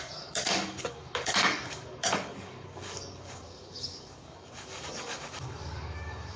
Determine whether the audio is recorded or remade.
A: remade